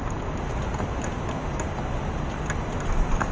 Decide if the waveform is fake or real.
real